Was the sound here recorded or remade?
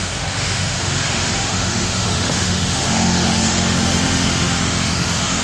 remade